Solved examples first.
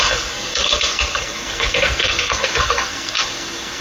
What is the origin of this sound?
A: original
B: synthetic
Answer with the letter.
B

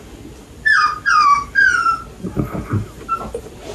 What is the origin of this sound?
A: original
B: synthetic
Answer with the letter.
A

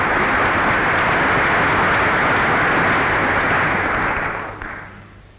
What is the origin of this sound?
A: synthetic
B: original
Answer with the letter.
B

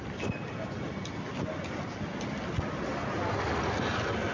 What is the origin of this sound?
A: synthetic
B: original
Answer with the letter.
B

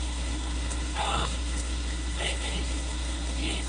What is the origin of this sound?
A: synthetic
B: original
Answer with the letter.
A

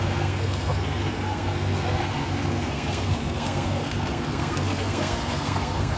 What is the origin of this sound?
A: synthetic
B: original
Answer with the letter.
A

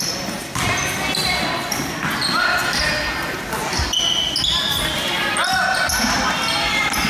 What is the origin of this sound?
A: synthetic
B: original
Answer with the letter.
B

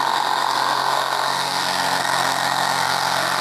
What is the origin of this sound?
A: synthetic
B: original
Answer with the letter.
A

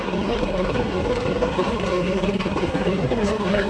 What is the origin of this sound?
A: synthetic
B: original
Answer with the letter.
A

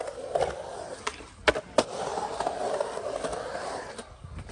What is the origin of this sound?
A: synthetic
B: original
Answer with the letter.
B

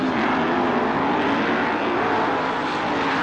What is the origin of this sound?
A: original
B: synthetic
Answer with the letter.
A